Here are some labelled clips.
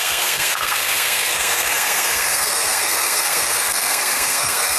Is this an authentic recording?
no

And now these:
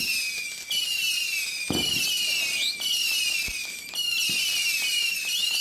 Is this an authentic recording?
yes